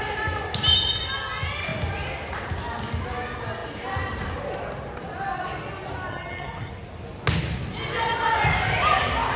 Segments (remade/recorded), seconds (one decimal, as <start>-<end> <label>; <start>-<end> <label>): 0.0-6.1 recorded; 6.1-6.7 remade; 6.7-9.4 recorded